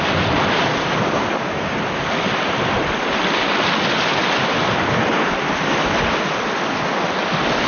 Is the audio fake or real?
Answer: real